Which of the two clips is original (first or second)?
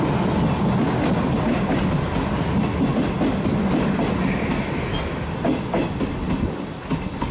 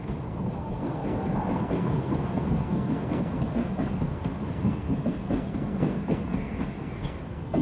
first